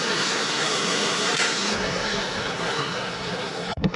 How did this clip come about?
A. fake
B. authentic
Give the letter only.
A